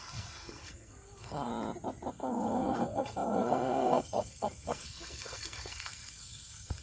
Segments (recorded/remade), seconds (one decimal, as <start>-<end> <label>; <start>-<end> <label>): 0.0-1.5 remade; 1.5-2.1 recorded; 2.1-6.8 remade